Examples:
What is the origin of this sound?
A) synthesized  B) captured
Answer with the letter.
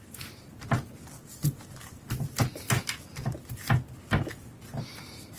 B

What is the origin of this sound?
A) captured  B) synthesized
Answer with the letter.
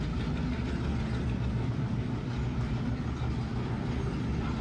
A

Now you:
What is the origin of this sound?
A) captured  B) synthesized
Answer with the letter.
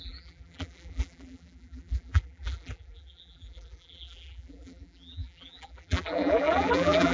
B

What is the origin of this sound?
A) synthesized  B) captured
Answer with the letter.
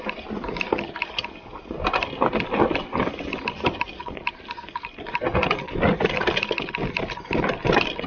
B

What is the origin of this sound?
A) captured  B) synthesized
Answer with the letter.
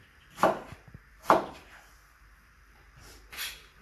B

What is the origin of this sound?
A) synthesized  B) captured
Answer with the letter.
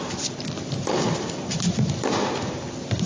A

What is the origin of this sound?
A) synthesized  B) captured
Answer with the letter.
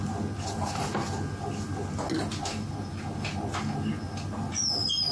B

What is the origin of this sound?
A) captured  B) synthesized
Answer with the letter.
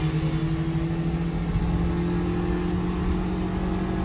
A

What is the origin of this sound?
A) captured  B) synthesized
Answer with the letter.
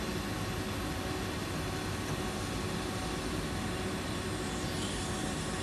A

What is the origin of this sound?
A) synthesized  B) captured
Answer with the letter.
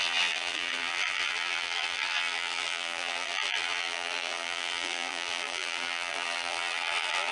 A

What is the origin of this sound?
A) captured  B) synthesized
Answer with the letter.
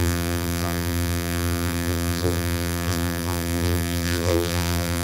B